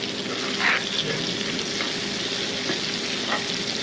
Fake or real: real